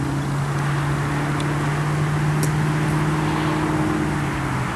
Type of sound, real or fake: real